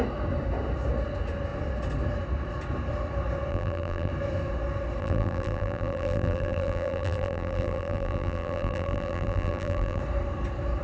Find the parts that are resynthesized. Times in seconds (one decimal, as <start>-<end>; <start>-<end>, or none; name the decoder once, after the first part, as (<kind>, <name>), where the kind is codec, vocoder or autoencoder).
3.5-4.1 (vocoder, BigVGAN v2); 5.0-10.0

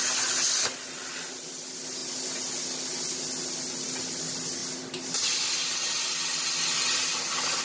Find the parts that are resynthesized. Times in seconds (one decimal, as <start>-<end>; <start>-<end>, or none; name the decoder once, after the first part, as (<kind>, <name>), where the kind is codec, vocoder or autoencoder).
none

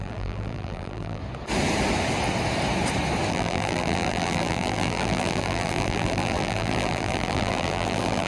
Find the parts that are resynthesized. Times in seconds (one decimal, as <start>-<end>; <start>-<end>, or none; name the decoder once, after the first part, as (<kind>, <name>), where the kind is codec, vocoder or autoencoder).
0.0-1.2 (vocoder, BigVGAN v2); 3.3-8.3

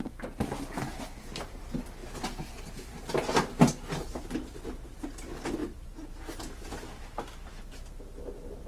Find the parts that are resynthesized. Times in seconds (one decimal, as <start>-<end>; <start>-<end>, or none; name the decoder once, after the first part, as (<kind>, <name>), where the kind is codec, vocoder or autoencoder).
none

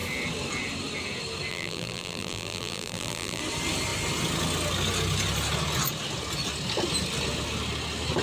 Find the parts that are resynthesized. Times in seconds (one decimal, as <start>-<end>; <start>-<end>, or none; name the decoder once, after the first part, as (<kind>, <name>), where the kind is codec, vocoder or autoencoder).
1.5-3.4 (vocoder, BigVGAN v2)

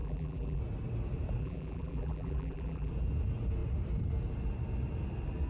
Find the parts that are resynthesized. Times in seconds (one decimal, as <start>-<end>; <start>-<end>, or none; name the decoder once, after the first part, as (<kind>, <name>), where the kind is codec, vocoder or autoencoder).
0.0-0.6 (vocoder, BigVGAN v2); 1.4-2.9